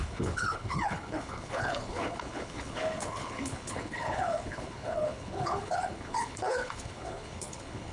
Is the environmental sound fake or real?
fake